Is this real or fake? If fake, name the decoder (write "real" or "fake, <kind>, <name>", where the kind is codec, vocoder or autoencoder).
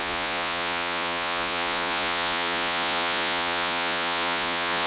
fake, vocoder, Vocos